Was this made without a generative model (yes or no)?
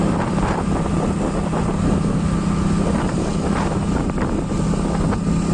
yes